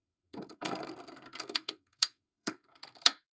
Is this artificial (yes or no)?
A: yes